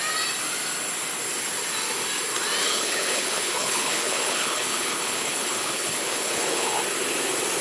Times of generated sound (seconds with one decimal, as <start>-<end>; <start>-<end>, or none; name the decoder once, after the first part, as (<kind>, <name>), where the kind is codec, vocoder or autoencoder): 2.6-6.8 (codec, HILCodec)

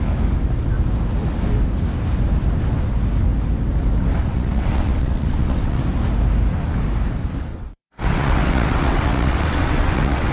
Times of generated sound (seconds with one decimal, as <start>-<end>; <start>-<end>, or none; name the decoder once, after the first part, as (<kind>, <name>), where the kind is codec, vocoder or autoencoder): 4.2-5.8 (vocoder, WaveNeXt); 7.5-10.3